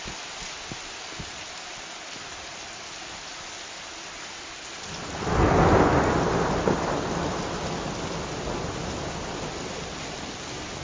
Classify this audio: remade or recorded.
recorded